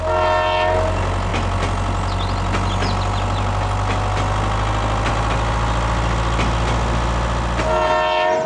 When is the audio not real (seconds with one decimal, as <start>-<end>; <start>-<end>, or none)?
none